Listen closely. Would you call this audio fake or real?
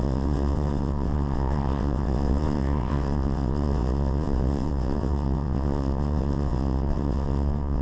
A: fake